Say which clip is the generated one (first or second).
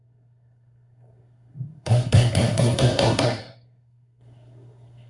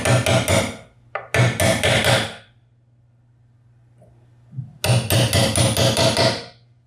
first